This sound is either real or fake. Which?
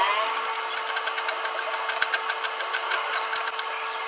real